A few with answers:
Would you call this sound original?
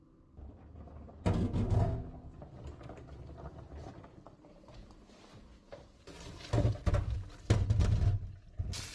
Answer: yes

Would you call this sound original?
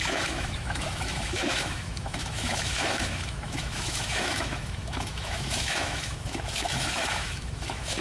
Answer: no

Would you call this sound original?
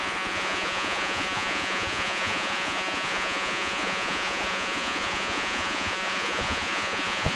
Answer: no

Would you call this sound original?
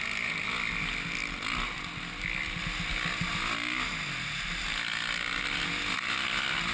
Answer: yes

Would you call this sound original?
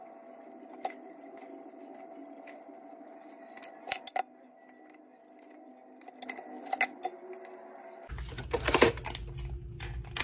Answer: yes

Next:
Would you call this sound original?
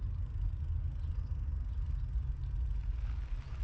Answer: yes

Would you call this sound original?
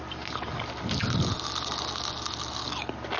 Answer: yes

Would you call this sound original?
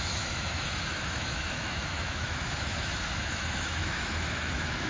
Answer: no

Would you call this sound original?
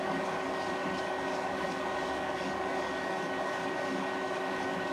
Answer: no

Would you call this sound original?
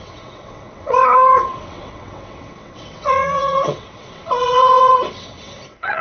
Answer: no